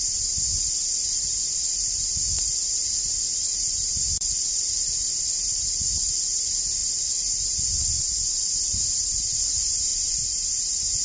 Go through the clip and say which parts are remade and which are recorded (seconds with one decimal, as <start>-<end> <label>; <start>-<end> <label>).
0.0-9.9 remade; 9.9-10.6 recorded; 10.6-11.0 remade